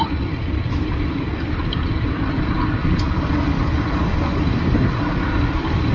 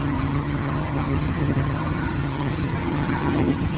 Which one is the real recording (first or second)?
first